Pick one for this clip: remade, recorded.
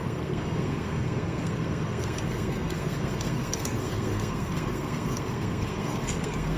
remade